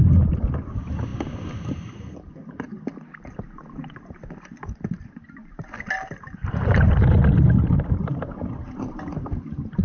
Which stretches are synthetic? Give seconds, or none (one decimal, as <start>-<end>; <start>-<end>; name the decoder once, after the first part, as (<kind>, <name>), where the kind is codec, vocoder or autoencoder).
none